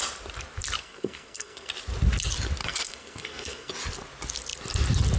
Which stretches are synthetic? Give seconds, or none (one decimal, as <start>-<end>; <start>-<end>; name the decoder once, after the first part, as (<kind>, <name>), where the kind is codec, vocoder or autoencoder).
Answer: 0.8-1.7 (codec, SNAC); 2.6-3.7